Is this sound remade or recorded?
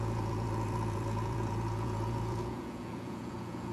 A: remade